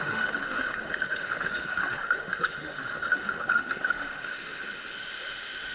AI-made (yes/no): yes